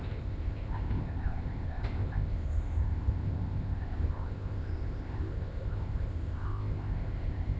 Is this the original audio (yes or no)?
no